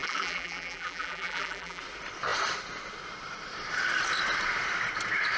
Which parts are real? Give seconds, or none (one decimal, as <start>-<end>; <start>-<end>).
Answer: 1.8-5.4